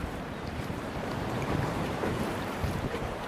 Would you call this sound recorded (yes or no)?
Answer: no